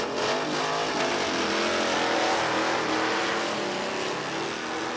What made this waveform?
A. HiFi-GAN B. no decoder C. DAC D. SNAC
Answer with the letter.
B